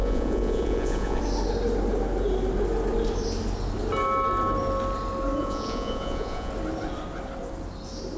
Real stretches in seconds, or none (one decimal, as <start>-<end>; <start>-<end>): 1.2-5.4; 6.5-8.2